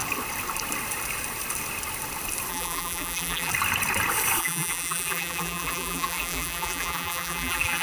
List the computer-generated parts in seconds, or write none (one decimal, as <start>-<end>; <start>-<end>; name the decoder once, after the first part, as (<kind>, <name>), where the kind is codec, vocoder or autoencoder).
2.5-3.5 (vocoder, BigVGAN v2); 4.4-7.8